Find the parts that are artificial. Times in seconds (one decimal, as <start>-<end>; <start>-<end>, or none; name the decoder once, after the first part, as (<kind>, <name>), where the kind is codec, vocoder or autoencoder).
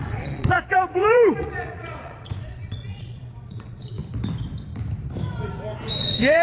0.0-4.0 (vocoder, Vocos); 6.0-6.4